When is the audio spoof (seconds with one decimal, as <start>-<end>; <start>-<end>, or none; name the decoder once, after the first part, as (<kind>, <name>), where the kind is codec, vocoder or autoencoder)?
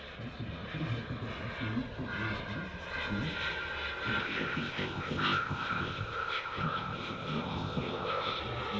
4.2-8.4 (codec, ZipCodec)